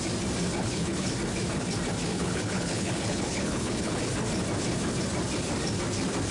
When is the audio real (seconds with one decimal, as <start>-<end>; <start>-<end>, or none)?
0.0-0.6; 1.1-2.1; 4.0-6.3